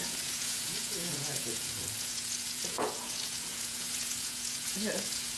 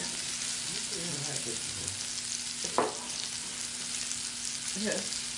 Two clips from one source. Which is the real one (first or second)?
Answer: second